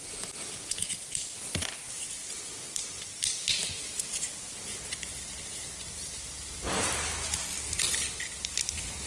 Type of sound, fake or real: real